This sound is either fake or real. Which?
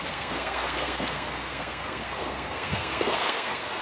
fake